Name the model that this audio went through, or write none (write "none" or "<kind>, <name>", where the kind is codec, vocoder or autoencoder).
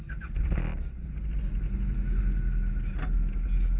none